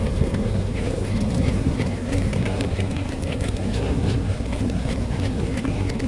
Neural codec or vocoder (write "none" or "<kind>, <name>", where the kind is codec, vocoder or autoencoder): codec, SNAC